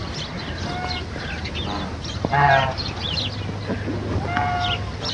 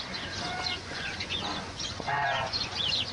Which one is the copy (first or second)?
second